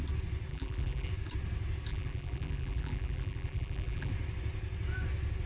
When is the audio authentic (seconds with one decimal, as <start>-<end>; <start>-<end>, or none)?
0.0-0.5; 1.1-1.9; 4.1-5.5